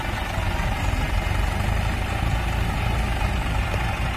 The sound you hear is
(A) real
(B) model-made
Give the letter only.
A